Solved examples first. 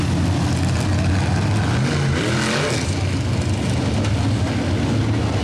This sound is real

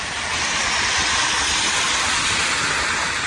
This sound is real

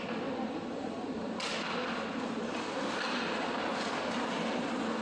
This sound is real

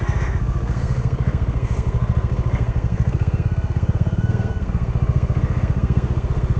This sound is fake